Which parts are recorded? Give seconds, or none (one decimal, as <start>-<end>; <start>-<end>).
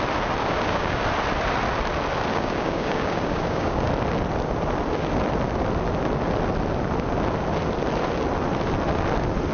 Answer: 0.0-0.4; 1.0-2.3; 3.9-9.5